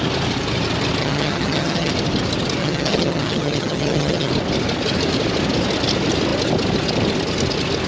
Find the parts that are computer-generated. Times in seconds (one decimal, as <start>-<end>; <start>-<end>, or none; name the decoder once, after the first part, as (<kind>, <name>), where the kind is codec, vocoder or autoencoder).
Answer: 1.0-1.9 (vocoder, HiFi-GAN); 2.6-4.3